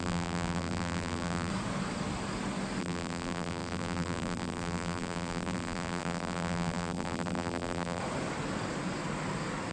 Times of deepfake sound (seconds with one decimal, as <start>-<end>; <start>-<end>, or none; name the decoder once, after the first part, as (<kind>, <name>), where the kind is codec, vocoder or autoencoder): 0.0-1.5 (vocoder, BigVGAN v2); 2.8-8.0